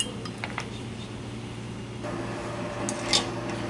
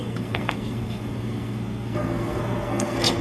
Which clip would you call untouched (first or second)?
first